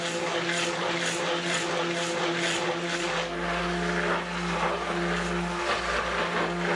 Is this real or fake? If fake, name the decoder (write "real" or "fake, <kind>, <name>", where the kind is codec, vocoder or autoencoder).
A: real